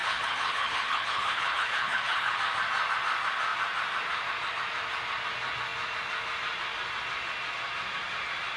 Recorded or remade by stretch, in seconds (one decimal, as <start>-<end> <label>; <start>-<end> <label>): 0.0-2.4 remade; 2.4-8.6 recorded